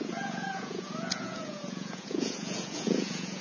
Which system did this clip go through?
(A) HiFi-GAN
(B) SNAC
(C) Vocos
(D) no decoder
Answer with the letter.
C